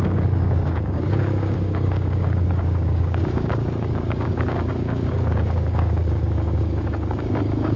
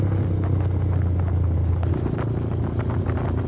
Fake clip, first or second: first